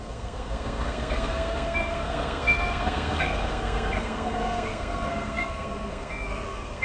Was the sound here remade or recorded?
remade